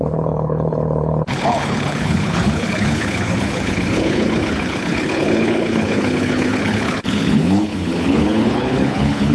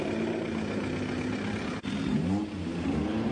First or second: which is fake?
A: first